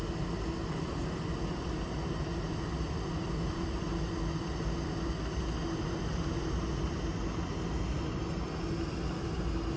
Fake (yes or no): no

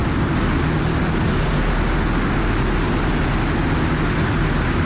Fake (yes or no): no